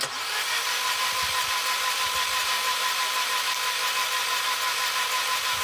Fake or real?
fake